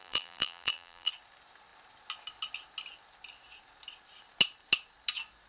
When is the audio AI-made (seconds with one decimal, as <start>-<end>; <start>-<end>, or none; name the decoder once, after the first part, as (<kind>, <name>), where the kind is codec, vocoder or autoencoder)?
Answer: 0.0-1.1 (vocoder, BigVGAN v2)